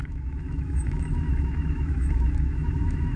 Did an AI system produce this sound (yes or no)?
yes